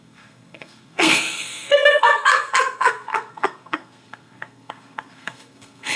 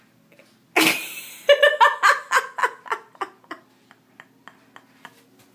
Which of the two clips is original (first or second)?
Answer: second